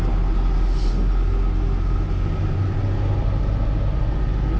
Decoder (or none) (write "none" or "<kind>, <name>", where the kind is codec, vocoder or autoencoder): none